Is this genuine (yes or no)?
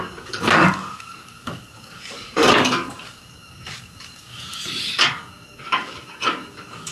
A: no